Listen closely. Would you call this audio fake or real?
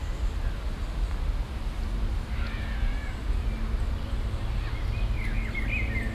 real